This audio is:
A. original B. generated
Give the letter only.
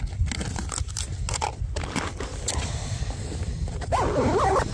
A